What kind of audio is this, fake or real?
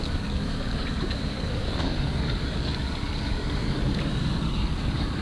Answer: fake